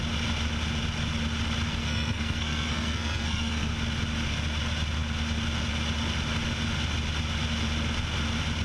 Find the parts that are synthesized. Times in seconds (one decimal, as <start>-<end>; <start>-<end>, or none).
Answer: 1.7-3.7